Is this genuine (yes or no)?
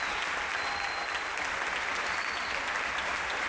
yes